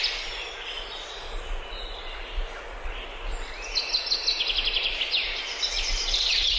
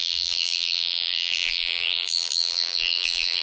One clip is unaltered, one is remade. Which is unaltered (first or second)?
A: first